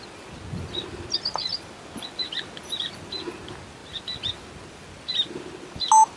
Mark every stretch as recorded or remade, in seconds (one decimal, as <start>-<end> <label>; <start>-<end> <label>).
0.0-6.2 recorded